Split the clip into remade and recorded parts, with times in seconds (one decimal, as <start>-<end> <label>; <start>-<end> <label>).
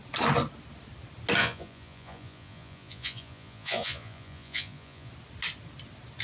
0.0-1.4 recorded; 1.4-5.1 remade; 5.1-6.2 recorded